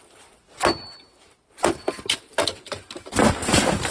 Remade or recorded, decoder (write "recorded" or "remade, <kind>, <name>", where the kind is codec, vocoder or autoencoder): recorded